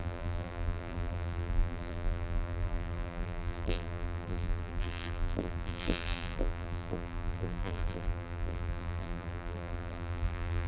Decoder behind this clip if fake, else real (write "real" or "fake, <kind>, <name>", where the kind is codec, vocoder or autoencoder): fake, vocoder, BigVGAN v2